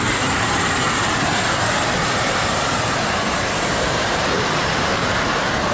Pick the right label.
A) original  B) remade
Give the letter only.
B